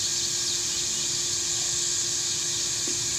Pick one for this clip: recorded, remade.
recorded